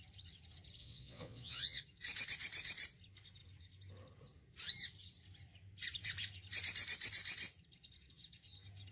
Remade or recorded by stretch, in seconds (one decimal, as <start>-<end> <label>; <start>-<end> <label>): 0.0-0.8 recorded; 0.8-1.8 remade; 1.8-8.9 recorded